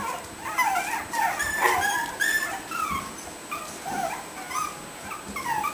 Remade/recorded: recorded